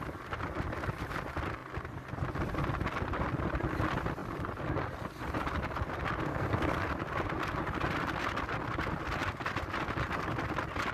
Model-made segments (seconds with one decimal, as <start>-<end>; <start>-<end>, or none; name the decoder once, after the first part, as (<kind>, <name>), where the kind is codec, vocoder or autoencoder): 6.3-6.9 (codec, SNAC)